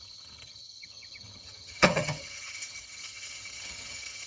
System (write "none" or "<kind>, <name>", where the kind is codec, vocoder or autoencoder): vocoder, HiFi-GAN